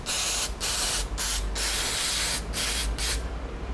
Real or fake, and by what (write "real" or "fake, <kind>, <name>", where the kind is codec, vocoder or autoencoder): real